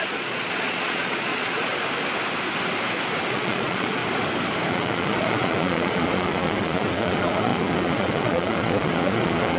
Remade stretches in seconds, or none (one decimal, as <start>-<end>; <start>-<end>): 0.0-1.7; 3.3-4.0; 4.7-9.6

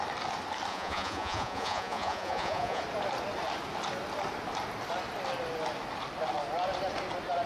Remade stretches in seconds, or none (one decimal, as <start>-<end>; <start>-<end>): 0.7-2.8

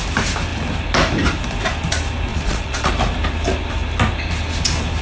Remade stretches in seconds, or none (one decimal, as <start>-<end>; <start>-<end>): 2.3-2.9

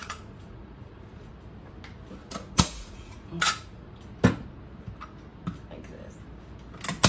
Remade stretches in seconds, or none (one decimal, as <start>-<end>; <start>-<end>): 0.0-1.3; 2.2-4.0

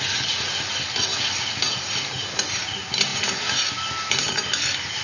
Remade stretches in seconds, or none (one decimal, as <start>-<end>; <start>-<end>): none

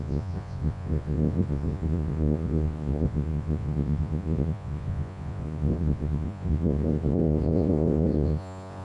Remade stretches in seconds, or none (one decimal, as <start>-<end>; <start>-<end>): 0.0-8.8